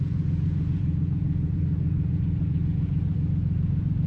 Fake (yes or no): yes